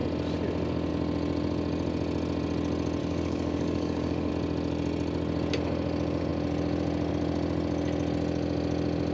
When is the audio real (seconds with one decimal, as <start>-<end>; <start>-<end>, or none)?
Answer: 0.0-3.0; 4.3-9.1